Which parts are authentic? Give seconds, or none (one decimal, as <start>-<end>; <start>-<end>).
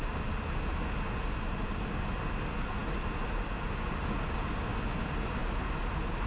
0.0-6.3